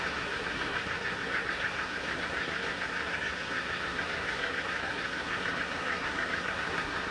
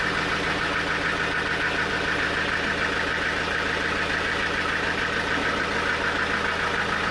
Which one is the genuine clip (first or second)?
second